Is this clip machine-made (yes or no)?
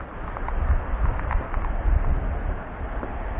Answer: no